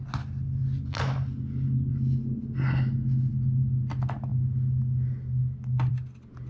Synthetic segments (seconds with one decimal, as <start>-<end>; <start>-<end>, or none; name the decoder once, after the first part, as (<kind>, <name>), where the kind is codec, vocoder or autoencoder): none